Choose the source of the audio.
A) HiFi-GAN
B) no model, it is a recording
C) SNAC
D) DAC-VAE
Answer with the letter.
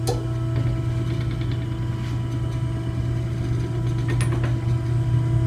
B